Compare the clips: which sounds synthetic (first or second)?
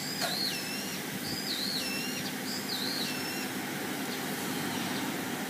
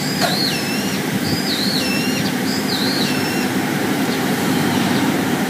second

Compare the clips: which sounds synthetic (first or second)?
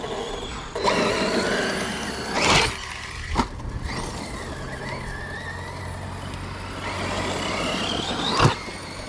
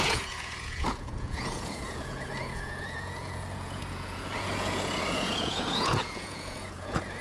second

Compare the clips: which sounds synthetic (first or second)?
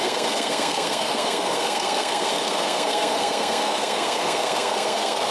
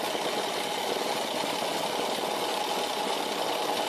first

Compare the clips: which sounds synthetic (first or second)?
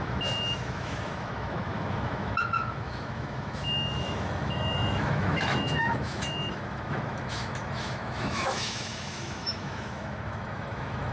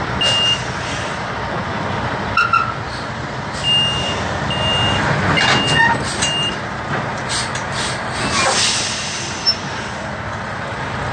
first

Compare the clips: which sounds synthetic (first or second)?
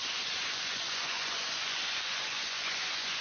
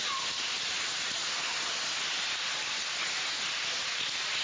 first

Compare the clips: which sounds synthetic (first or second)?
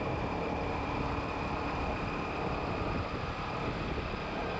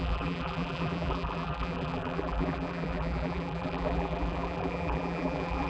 second